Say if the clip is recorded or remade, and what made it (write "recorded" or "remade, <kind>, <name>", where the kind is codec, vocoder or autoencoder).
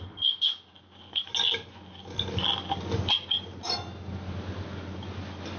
recorded